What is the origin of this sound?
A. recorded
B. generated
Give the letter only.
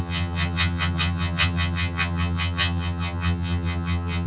B